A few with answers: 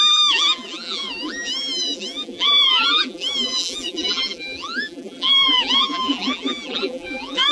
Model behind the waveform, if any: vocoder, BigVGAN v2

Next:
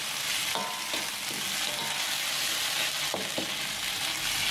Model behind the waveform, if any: none